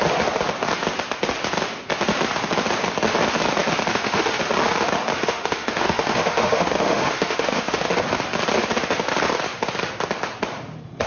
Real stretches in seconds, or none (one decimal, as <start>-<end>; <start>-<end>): 0.0-3.9; 4.4-5.2; 7.9-11.1